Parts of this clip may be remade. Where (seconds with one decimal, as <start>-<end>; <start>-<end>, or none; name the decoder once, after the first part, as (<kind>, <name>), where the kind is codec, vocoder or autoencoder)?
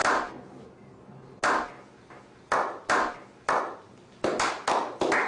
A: none